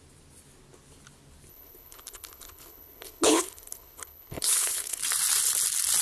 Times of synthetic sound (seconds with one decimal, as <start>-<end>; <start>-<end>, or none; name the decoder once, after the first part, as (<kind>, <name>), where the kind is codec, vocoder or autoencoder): 1.5-5.0 (codec, HILCodec)